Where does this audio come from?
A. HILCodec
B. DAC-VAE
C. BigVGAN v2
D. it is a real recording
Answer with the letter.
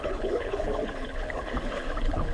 A